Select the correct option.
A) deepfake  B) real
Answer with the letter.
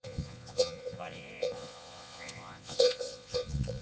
A